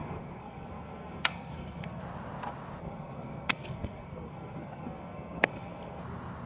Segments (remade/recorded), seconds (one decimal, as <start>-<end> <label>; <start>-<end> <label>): 0.0-2.0 remade; 2.0-2.8 recorded; 2.8-6.0 remade; 6.0-6.5 recorded